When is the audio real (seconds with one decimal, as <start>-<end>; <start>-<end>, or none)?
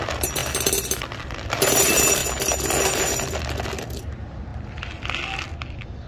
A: 0.4-1.0; 2.2-4.0; 4.5-6.1